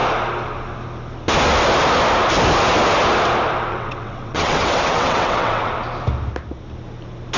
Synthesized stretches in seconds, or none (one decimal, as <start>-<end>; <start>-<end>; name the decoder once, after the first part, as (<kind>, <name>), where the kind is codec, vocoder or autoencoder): 3.7-5.7 (vocoder, WaveNeXt)